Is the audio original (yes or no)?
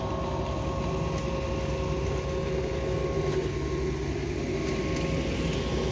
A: yes